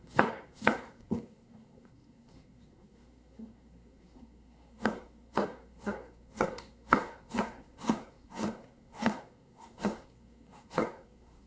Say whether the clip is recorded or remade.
remade